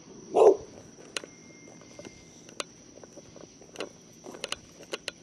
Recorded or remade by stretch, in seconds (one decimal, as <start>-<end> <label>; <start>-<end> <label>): 0.0-1.4 remade; 1.4-2.7 recorded; 2.7-5.2 remade